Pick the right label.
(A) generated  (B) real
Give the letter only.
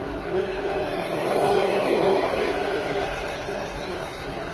A